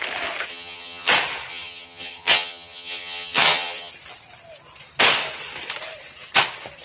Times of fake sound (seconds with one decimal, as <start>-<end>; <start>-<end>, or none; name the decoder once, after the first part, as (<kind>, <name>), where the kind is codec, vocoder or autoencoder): 0.5-1.1 (vocoder, HiFi-GAN); 1.5-3.9